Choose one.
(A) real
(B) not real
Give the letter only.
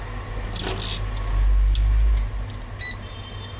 A